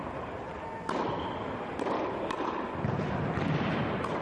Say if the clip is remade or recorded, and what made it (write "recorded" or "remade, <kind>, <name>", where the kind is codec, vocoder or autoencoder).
recorded